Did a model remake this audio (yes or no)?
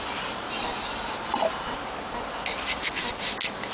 no